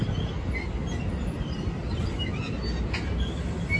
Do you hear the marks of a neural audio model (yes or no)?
no